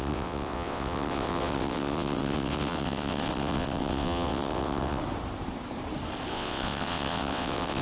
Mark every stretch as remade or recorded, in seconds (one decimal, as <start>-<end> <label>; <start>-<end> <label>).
0.0-5.0 remade; 5.0-6.3 recorded; 6.3-7.8 remade

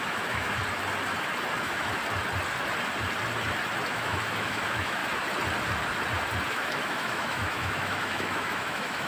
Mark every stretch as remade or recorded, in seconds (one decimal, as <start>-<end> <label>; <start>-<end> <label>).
0.0-0.6 remade; 0.6-1.6 recorded; 1.6-2.0 remade; 2.0-3.9 recorded; 3.9-5.0 remade; 5.0-6.5 recorded; 6.5-9.1 remade

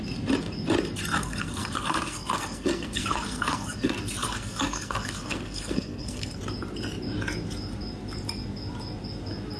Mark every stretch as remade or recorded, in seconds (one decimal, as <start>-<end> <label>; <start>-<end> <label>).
0.0-1.2 recorded; 1.2-6.4 remade; 6.4-9.6 recorded

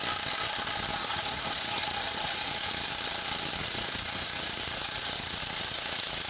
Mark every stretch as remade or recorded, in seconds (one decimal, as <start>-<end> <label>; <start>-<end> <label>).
0.0-0.9 recorded; 0.9-2.7 remade; 2.7-3.6 recorded; 3.6-5.4 remade; 5.4-6.3 recorded